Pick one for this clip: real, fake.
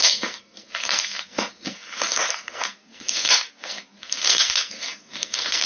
fake